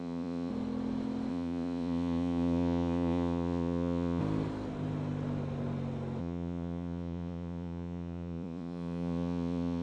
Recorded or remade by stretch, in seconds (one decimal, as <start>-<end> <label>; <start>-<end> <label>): 0.0-0.5 remade; 0.5-1.3 recorded; 1.3-4.2 remade; 4.2-6.2 recorded; 6.2-9.8 remade